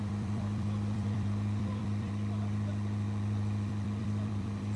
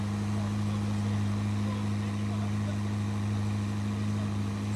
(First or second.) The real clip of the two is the second